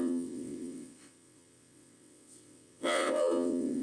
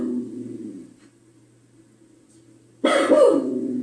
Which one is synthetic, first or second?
first